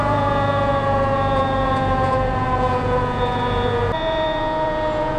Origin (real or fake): fake